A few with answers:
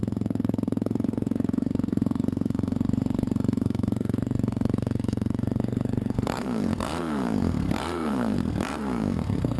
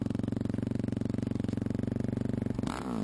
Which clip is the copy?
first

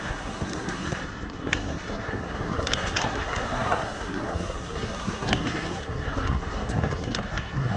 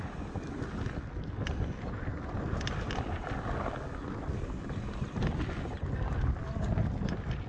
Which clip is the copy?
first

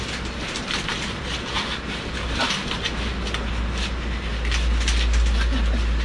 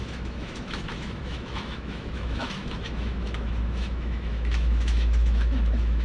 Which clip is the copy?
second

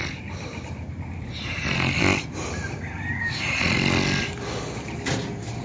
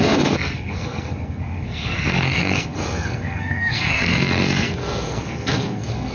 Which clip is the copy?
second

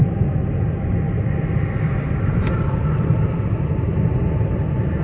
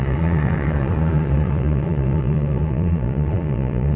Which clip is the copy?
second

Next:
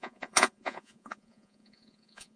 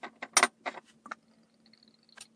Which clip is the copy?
first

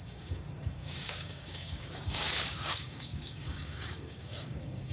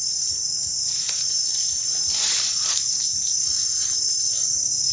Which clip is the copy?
first